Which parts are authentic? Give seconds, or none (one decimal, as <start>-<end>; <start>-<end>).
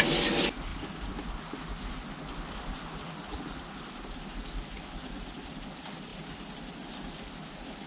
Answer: 0.0-7.9